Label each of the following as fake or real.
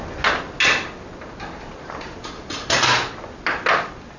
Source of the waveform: real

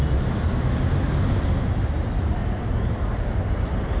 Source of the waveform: real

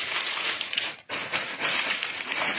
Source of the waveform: fake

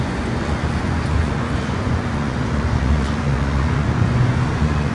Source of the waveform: fake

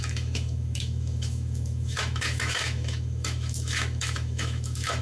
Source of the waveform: fake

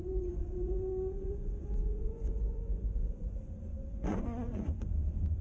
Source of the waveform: fake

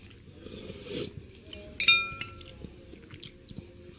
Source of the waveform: real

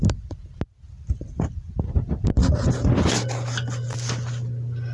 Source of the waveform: real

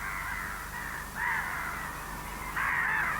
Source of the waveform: real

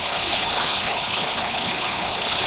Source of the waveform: fake